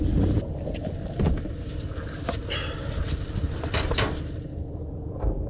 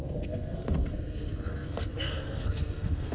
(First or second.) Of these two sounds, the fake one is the second